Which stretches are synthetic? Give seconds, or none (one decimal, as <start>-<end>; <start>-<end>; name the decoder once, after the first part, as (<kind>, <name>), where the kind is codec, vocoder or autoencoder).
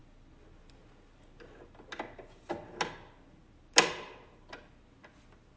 none